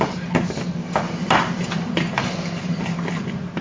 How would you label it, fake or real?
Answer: real